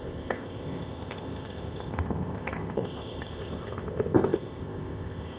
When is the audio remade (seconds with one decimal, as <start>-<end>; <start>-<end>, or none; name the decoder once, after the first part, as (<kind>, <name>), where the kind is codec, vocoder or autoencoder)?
0.0-5.4 (codec, ZipCodec)